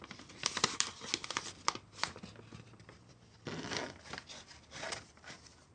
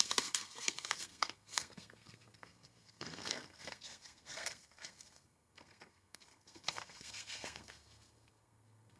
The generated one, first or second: second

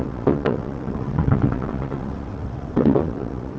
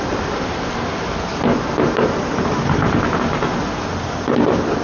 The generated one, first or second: first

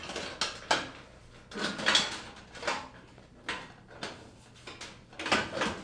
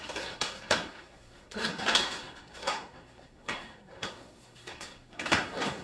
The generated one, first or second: second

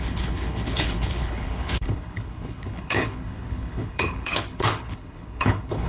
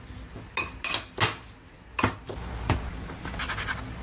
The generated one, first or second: first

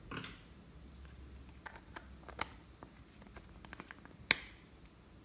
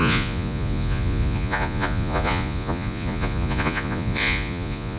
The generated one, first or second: second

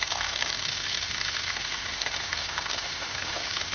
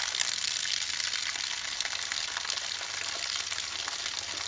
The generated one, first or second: first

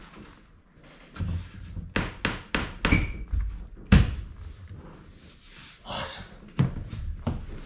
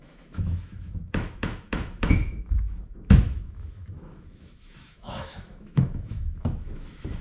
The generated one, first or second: second